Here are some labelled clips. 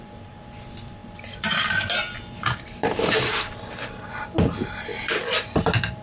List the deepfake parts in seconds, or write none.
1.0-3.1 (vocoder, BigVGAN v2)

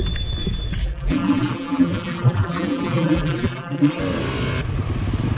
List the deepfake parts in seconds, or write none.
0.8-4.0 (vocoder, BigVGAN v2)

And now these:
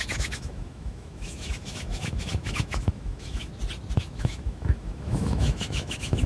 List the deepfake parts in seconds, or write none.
0.0-3.5 (autoencoder, DAC-VAE); 4.0-6.3